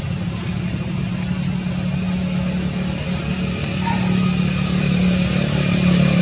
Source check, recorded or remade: recorded